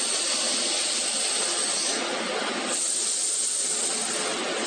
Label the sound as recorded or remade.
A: recorded